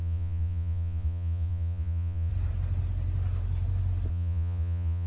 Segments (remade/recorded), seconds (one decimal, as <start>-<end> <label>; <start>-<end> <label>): 0.0-2.3 remade; 2.3-4.1 recorded; 4.1-5.1 remade